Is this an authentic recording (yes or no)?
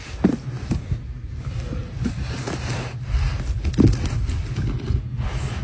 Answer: yes